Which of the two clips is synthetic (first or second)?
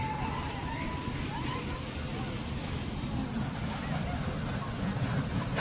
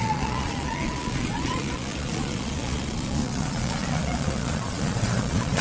second